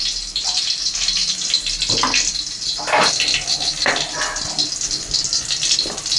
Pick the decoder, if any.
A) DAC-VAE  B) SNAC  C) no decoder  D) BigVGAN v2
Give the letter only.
C